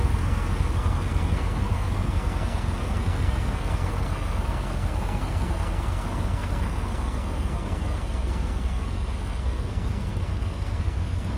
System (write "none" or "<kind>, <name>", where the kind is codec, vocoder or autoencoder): codec, SNAC